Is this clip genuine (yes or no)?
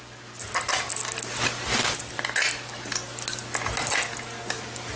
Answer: yes